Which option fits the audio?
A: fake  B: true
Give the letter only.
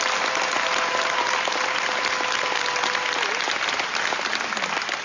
B